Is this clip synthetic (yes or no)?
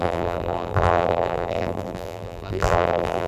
yes